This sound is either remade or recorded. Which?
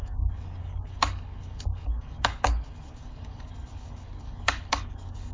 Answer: remade